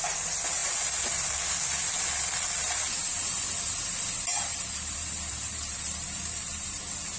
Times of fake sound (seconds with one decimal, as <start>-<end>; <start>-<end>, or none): 4.3-6.8